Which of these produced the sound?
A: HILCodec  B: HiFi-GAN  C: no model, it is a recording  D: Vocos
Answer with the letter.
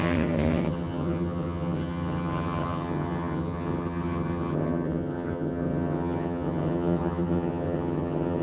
B